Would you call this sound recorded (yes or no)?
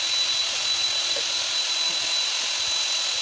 yes